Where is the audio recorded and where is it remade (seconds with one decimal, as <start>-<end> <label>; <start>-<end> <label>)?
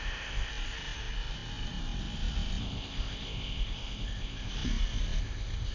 0.0-0.5 remade; 0.5-2.6 recorded; 2.6-4.5 remade; 4.5-5.2 recorded; 5.2-5.7 remade